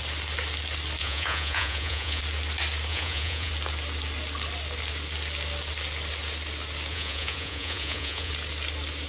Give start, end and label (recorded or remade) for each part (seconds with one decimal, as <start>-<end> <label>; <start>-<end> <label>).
0.0-1.0 recorded; 1.0-2.2 remade; 2.2-2.9 recorded; 2.9-3.5 remade; 3.5-6.9 recorded; 6.9-8.3 remade; 8.3-9.1 recorded